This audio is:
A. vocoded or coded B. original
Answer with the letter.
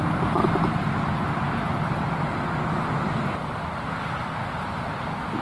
B